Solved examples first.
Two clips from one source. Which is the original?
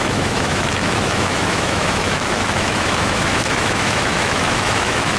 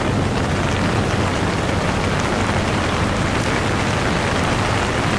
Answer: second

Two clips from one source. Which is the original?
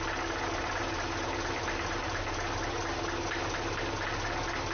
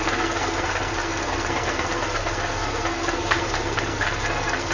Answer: first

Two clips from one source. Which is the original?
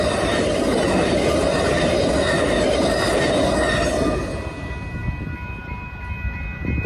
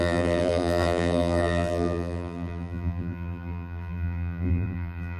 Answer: first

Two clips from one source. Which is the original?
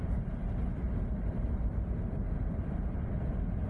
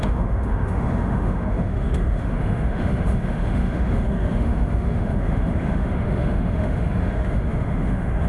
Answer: first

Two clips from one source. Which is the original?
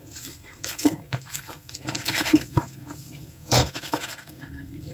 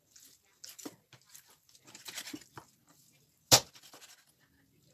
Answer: second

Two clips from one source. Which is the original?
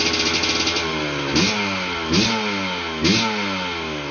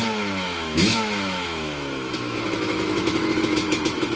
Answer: first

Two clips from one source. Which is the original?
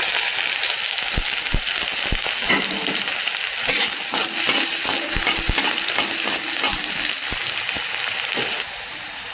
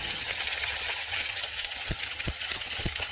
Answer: first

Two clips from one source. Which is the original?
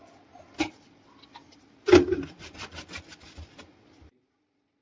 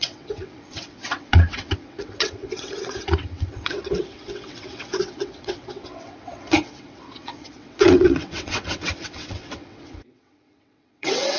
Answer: first